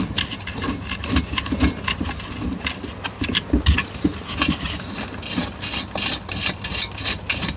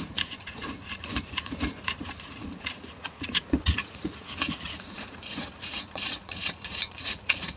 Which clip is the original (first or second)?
first